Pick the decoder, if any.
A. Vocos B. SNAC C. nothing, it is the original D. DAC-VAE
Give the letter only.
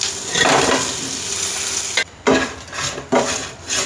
C